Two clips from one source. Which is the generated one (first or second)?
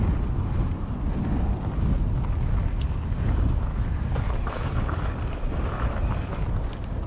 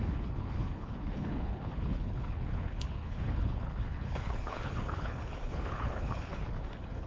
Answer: second